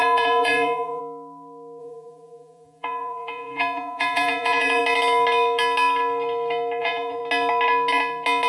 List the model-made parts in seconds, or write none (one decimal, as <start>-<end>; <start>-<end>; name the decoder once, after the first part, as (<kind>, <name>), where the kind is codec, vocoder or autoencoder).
0.0-1.0 (vocoder, Vocos); 1.8-4.8; 6.8-7.2